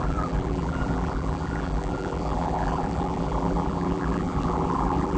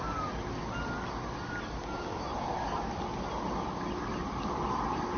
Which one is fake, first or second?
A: first